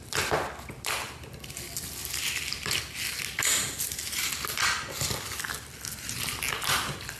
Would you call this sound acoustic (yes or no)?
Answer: yes